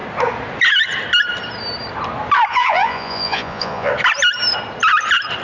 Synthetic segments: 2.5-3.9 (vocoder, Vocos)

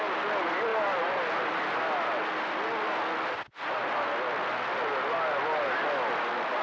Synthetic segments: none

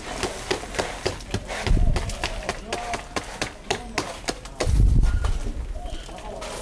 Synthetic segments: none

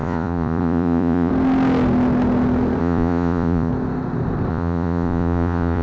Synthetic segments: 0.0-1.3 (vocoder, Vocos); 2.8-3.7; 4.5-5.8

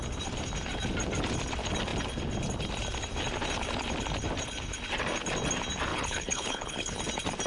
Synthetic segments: 5.9-7.0 (codec, HILCodec)

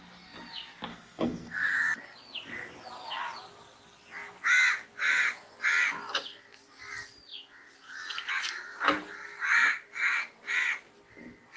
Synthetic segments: 0.9-1.8 (codec, SNAC)

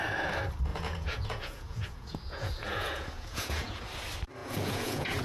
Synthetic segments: 0.7-3.8 (vocoder, Vocos); 4.4-5.2

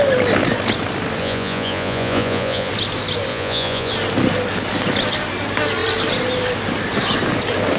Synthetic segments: 1.2-2.7 (vocoder, Vocos); 3.3-3.9